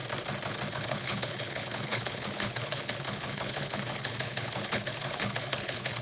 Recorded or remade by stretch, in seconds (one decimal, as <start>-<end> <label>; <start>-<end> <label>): 0.0-0.7 recorded; 0.7-6.0 remade